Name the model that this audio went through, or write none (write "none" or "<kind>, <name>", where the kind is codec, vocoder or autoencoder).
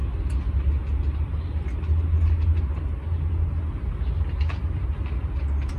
none